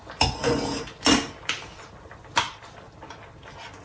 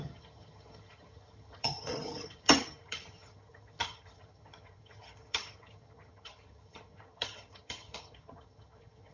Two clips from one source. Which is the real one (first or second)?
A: first